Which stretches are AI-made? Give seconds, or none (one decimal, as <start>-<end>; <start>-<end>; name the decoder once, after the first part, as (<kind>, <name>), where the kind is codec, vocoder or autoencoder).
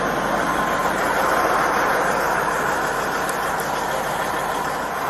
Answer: none